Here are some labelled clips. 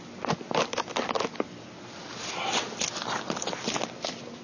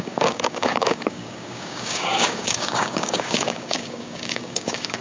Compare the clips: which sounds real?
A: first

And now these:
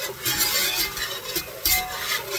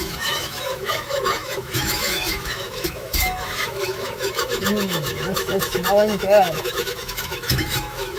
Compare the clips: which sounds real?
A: first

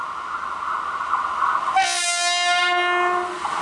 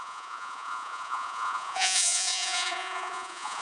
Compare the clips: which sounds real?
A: first